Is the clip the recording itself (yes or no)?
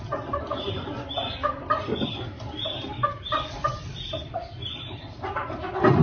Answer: no